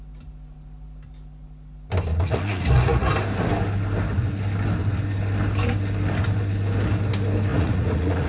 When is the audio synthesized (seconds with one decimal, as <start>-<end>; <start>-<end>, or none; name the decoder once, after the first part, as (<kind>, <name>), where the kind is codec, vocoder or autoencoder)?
2.1-3.1 (vocoder, Vocos); 7.5-8.3